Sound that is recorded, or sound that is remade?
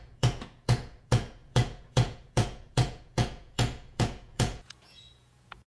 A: remade